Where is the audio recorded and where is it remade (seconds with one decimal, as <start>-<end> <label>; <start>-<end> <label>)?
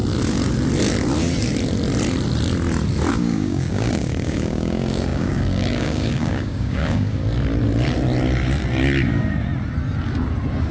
0.0-3.1 recorded; 3.1-7.2 remade; 7.2-10.7 recorded